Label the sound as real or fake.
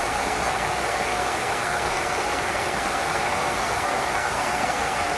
fake